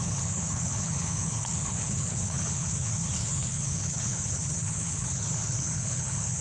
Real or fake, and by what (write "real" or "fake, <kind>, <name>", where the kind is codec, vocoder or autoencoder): fake, codec, HILCodec